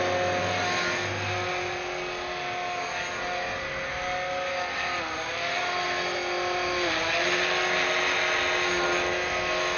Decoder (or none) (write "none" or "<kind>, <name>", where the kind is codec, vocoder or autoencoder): none